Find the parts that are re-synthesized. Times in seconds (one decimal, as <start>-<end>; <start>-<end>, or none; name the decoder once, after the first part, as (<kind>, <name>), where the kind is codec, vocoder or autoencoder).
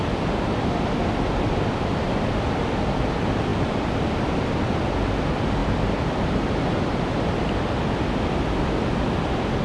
none